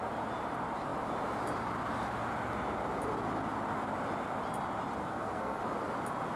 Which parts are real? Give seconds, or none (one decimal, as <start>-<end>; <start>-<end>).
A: 0.0-5.0; 5.6-6.4